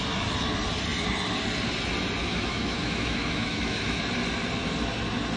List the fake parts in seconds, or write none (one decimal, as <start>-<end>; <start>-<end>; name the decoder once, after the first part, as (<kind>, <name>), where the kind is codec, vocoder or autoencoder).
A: 2.2-4.0 (autoencoder, DAC-VAE)